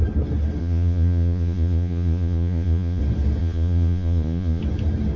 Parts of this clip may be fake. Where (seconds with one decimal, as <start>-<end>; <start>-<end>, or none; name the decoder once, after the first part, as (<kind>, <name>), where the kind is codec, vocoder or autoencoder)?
0.6-3.0 (vocoder, Vocos); 3.4-4.6